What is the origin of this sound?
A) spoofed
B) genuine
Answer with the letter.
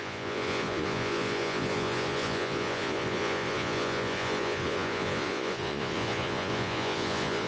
A